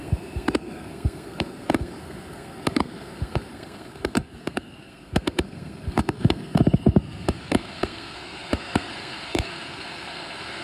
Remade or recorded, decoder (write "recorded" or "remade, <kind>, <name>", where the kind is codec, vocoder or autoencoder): remade, codec, SNAC